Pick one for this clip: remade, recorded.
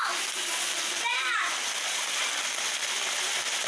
recorded